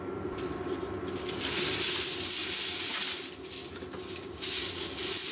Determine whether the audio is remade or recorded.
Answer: recorded